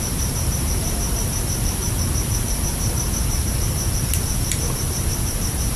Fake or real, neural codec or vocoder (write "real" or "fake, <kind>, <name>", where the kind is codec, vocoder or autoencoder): fake, vocoder, BigVGAN v2